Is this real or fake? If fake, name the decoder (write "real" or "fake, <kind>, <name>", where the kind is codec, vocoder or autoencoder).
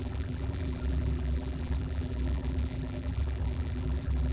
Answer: fake, vocoder, BigVGAN v2